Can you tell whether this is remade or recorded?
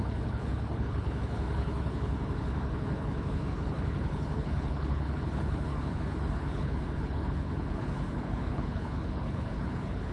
remade